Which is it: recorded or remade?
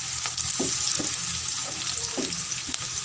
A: recorded